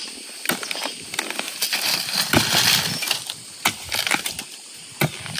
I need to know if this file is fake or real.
real